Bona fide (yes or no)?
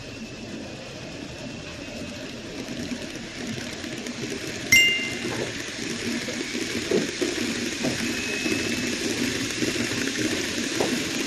no